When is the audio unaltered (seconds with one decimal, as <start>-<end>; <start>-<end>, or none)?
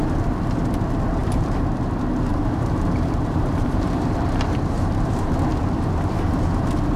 0.0-1.2; 1.7-2.3; 5.3-7.0